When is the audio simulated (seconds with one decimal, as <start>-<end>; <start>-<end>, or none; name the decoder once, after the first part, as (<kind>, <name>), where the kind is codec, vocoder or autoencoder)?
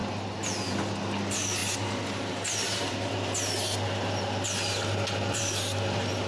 none